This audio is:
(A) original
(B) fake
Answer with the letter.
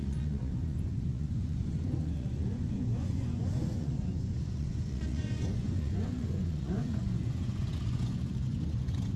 B